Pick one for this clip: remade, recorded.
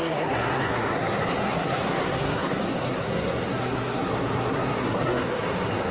remade